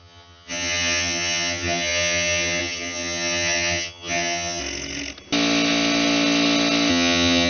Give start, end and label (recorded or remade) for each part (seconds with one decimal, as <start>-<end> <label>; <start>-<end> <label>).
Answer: 0.0-4.6 remade; 4.6-6.9 recorded; 6.9-7.5 remade